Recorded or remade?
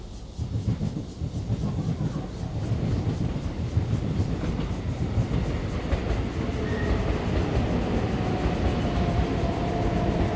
recorded